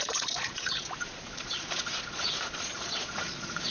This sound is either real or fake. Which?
fake